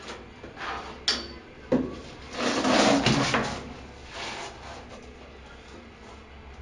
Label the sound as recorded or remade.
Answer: recorded